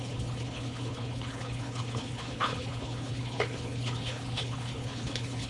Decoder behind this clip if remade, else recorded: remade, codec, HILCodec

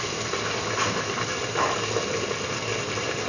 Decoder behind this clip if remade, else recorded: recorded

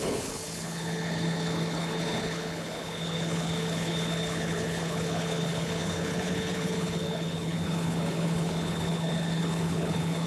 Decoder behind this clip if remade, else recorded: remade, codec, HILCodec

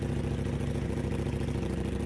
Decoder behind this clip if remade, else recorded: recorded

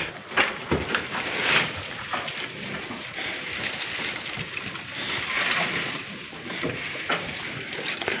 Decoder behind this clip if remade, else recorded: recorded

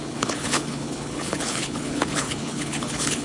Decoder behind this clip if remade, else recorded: remade, codec, HILCodec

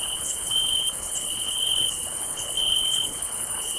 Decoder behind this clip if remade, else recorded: remade, codec, HILCodec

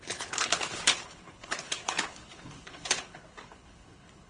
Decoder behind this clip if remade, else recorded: remade, codec, HILCodec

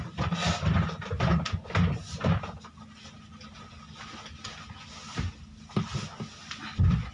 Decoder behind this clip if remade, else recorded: recorded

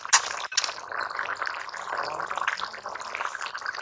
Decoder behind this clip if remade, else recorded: recorded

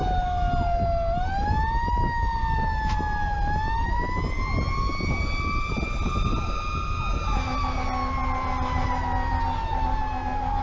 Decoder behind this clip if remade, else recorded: recorded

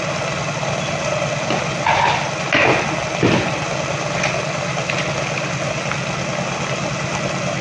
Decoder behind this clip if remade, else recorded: recorded